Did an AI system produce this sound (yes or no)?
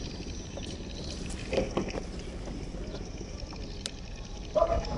no